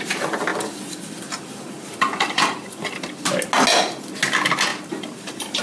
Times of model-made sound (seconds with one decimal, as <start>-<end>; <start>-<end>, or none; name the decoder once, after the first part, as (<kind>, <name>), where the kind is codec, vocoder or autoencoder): 0.5-2.9 (vocoder, BigVGAN v2); 4.7-5.6